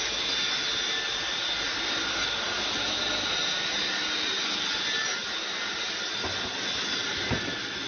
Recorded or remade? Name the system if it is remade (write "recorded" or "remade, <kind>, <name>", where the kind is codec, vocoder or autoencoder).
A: recorded